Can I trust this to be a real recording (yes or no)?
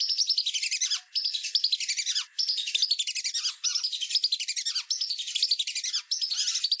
yes